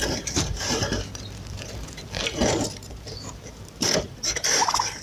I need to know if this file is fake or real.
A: fake